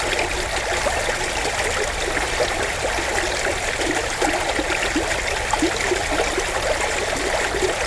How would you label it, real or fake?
real